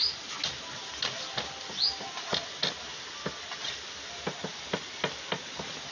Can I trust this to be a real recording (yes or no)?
yes